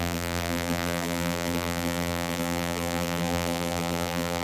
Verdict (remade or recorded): remade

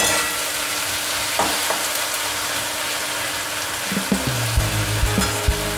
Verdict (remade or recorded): recorded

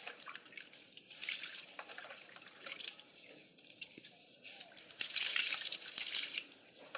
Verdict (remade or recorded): remade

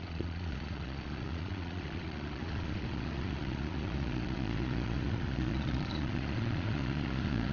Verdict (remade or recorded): remade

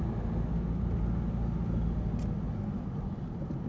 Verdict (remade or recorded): recorded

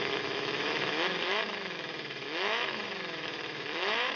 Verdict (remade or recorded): remade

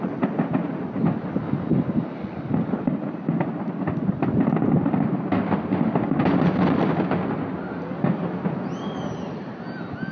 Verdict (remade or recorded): recorded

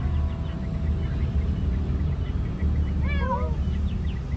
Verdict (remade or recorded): recorded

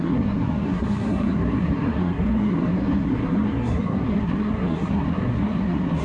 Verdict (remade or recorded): remade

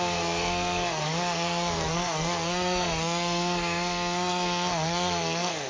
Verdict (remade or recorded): remade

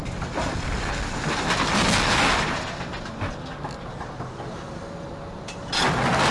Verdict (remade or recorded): recorded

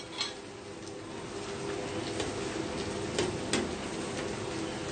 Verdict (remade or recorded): recorded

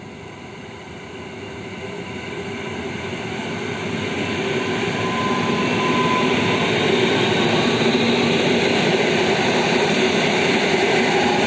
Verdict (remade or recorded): recorded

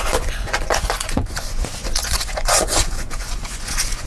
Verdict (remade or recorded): remade